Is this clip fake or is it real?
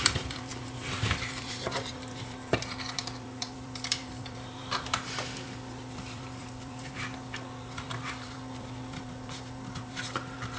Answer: fake